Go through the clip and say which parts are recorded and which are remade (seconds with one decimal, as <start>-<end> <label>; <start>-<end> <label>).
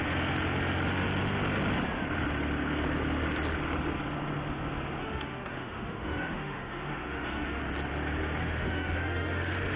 0.0-5.0 recorded; 5.0-7.6 remade; 7.6-8.4 recorded; 8.4-9.8 remade